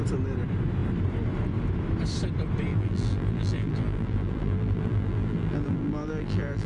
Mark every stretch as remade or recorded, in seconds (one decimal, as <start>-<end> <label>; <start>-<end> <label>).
0.0-2.7 recorded; 2.7-6.7 remade